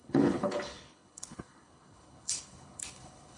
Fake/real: fake